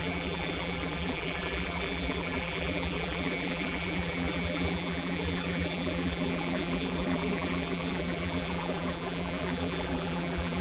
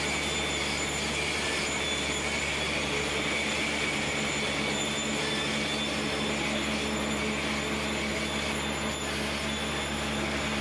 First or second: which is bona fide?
second